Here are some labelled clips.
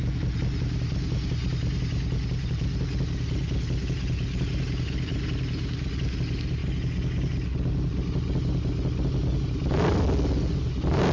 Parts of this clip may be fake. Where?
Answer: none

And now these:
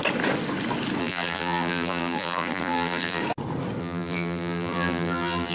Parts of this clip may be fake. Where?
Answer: 1.0-3.2 (vocoder, BigVGAN v2); 3.8-5.5